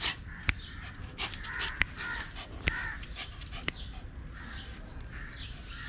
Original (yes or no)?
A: no